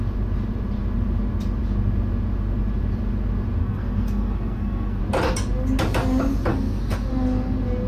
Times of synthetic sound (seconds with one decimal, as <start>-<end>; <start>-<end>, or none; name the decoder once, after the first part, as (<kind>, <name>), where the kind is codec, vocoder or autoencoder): 3.6-5.0 (codec, SNAC); 6.5-7.1